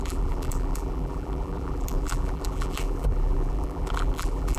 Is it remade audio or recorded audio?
remade